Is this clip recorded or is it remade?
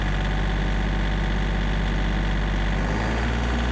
recorded